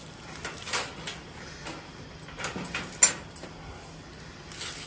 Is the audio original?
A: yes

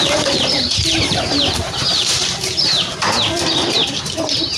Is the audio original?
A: no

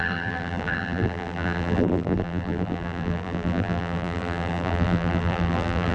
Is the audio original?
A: no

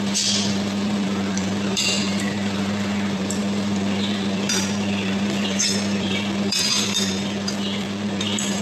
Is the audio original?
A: no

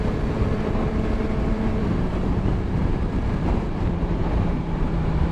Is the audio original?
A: no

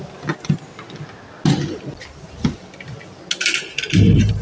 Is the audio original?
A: yes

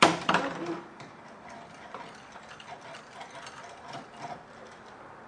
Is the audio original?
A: no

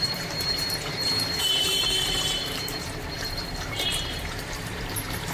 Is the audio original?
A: no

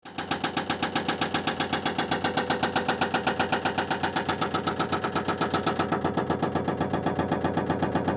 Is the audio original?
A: yes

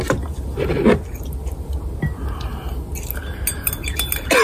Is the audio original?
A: yes